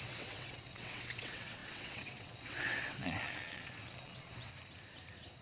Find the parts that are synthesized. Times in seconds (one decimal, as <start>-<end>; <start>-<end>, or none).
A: 0.0-4.5